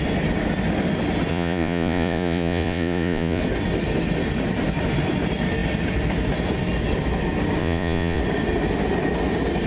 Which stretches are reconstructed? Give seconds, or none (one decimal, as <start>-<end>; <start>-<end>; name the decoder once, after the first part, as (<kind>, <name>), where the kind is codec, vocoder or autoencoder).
1.3-3.4 (vocoder, Vocos); 7.6-8.2